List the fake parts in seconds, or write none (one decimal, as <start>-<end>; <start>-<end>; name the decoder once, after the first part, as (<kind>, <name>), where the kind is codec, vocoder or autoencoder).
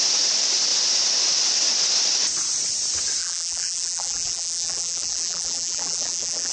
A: 3.2-6.5 (vocoder, BigVGAN v2)